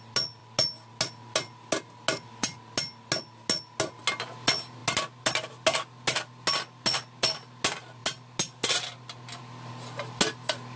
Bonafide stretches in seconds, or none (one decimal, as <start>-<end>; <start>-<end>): 0.0-10.8

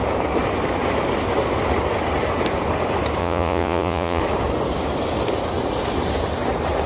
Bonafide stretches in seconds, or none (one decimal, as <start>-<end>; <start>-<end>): 0.0-3.2; 4.2-6.9

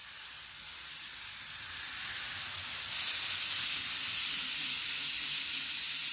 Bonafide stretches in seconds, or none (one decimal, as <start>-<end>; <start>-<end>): 0.0-6.1

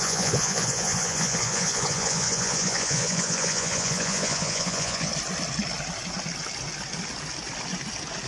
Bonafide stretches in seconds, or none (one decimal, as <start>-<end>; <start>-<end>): 5.1-8.3